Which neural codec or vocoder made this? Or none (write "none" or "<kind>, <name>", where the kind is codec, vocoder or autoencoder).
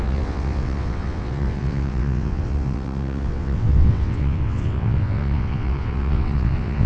vocoder, WaveNeXt